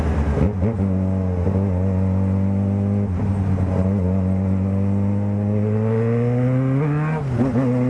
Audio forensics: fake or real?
real